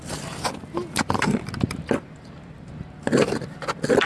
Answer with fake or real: real